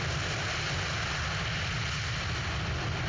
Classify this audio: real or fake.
real